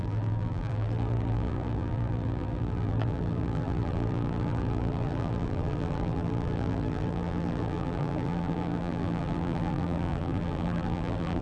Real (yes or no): no